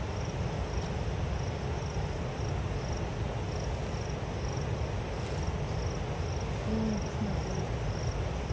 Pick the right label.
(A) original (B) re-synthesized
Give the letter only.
A